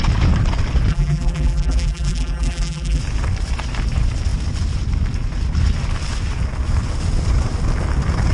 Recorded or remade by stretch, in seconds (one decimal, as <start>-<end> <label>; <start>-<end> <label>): 0.0-0.9 recorded; 0.9-3.0 remade; 3.0-8.3 recorded